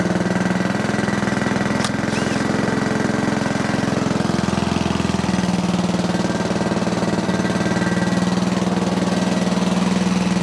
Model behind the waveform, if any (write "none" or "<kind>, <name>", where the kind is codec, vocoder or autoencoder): none